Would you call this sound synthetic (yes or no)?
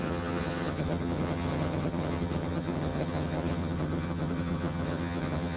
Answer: yes